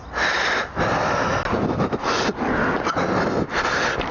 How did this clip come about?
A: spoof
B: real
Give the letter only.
B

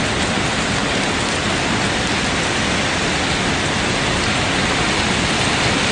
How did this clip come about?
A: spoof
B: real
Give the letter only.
B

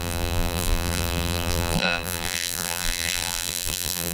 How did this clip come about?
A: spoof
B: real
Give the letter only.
A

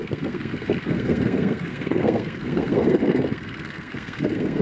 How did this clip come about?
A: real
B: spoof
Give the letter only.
B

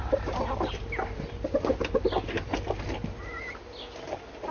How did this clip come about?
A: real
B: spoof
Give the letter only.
A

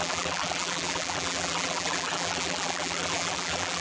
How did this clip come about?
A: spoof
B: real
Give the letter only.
A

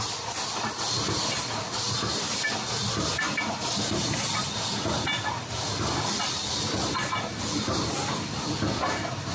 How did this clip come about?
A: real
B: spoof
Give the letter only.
A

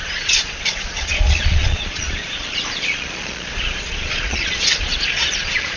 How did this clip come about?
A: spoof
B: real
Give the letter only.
A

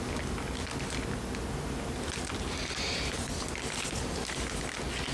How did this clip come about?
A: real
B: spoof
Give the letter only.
A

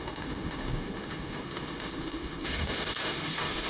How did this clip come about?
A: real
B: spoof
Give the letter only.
B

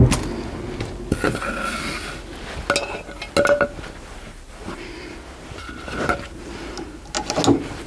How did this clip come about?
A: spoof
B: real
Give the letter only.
B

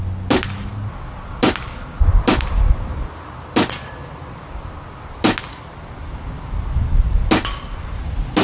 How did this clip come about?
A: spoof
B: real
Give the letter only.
B